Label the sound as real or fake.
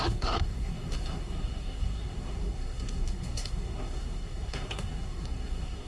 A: fake